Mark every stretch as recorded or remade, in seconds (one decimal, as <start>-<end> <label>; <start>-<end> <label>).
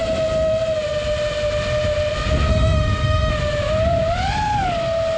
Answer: 0.0-2.5 recorded; 2.5-3.3 remade; 3.3-5.2 recorded